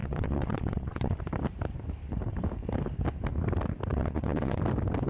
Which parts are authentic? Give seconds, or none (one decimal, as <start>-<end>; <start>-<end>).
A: 1.2-3.9; 4.6-5.1